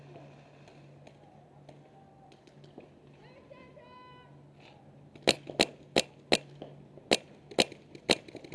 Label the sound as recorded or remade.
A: recorded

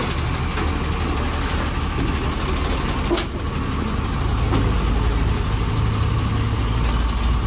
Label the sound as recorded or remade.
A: recorded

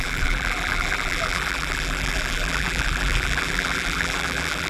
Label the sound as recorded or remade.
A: remade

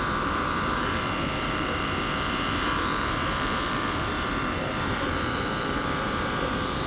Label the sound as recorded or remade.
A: remade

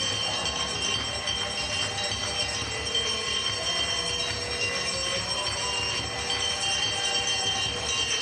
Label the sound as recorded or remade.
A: recorded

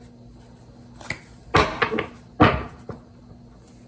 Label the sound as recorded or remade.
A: recorded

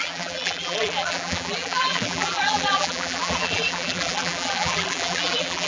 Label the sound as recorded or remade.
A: remade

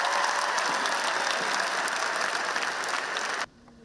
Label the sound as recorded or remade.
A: recorded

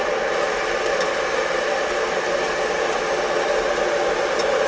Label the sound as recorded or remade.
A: recorded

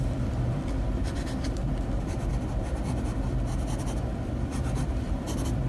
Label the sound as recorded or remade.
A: remade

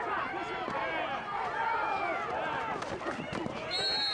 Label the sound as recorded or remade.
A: recorded